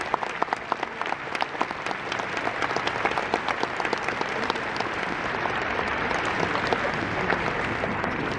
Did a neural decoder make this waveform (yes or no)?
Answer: no